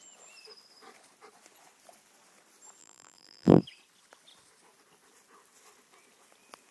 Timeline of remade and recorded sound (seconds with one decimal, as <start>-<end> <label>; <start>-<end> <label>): 0.0-2.8 recorded; 2.8-3.6 remade; 3.6-6.7 recorded